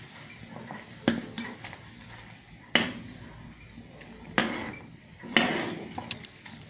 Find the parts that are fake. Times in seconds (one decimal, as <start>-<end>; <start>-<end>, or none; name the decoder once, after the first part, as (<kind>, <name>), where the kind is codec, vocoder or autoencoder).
none